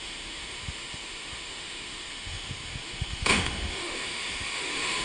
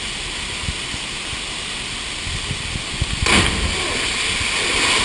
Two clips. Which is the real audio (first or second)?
second